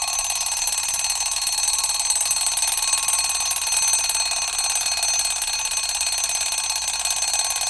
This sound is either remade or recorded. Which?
recorded